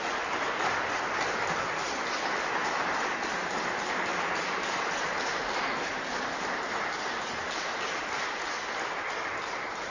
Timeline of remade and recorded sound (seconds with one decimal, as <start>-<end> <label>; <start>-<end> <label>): 0.0-9.9 recorded